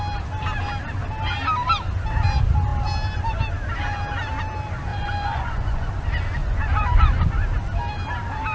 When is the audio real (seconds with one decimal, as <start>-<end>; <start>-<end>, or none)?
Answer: 0.0-4.9; 5.9-6.4; 7.3-8.5